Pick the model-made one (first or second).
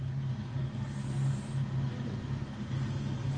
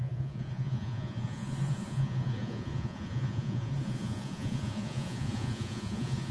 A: second